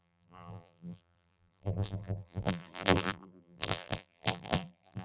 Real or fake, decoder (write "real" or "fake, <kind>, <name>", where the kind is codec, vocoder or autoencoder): fake, vocoder, BigVGAN v2